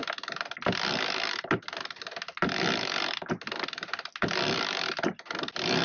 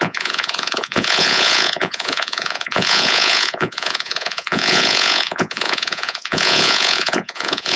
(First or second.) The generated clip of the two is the second